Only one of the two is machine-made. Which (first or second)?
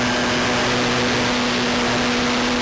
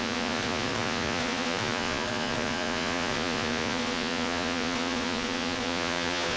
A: second